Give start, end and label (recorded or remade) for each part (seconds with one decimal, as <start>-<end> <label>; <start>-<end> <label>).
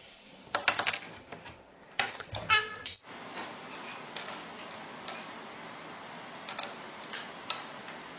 0.0-0.6 remade; 0.6-1.2 recorded; 1.2-3.2 remade; 3.2-8.2 recorded